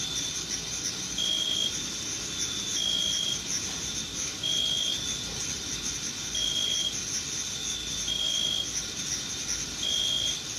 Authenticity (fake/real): real